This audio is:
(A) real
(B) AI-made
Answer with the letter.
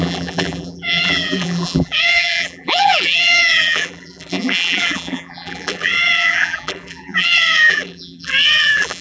B